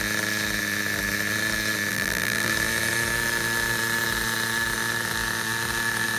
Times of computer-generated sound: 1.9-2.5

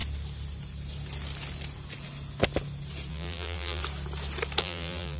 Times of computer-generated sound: 3.1-3.8; 4.6-5.2

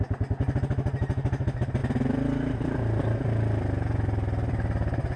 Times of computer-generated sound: 1.8-5.2

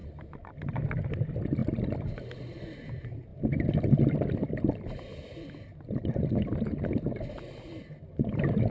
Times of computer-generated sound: none